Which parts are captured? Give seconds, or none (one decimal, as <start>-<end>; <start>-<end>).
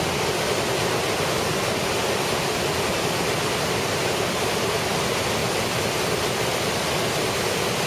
0.0-7.9